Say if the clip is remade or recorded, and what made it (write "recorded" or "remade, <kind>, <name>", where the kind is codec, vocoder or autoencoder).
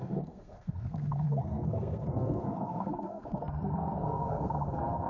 remade, codec, SNAC